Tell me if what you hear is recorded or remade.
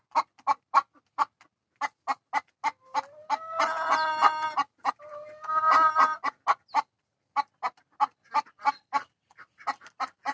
recorded